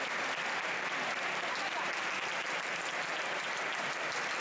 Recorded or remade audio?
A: recorded